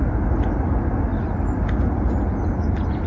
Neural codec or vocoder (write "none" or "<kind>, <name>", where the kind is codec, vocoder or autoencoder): none